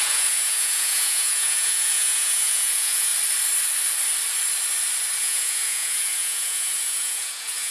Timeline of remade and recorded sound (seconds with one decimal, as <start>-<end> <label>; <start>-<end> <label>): 0.0-3.1 remade; 3.1-5.2 recorded; 5.2-7.7 remade